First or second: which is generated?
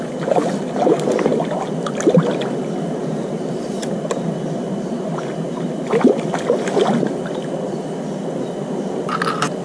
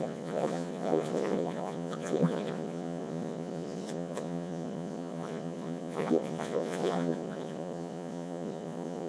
second